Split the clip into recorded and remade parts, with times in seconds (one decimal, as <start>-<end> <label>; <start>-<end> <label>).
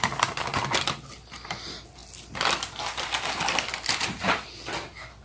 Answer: 0.0-5.2 recorded